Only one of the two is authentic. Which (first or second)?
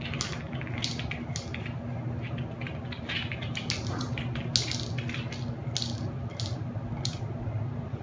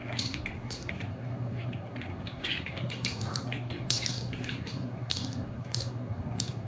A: first